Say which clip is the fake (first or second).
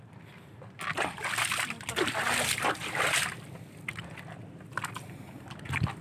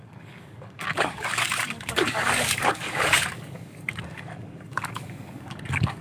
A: second